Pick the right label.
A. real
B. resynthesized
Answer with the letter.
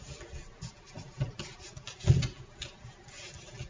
A